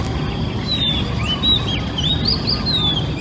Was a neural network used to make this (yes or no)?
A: no